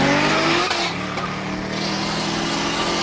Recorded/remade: recorded